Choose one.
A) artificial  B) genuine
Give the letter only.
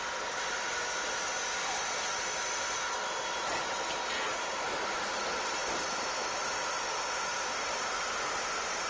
B